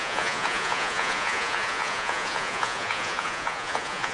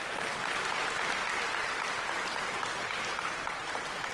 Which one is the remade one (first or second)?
first